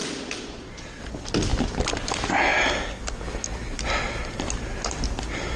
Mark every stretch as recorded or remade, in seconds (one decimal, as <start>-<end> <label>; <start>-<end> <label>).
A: 0.0-5.6 recorded